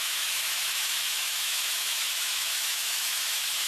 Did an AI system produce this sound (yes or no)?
yes